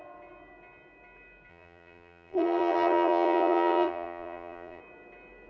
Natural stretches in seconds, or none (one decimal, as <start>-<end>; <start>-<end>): 0.0-1.5; 4.8-5.5